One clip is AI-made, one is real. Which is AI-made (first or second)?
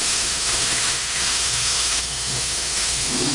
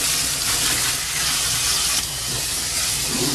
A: first